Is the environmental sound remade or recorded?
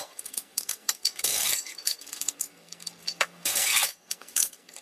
remade